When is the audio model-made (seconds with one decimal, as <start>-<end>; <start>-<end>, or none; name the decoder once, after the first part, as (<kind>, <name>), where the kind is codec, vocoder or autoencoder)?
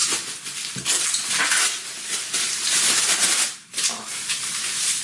3.0-5.0 (vocoder, BigVGAN v2)